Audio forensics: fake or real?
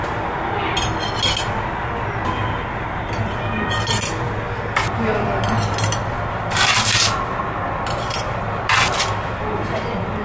real